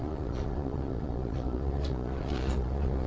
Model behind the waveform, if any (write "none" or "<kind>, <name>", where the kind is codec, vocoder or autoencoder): vocoder, Vocos